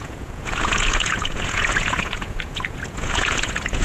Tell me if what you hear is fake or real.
fake